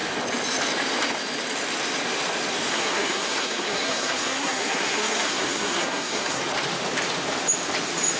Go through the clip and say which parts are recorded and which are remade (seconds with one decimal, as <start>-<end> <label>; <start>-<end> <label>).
0.0-2.7 recorded; 2.7-6.4 remade; 6.4-8.2 recorded